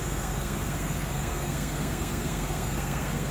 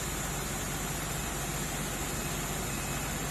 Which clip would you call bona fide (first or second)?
second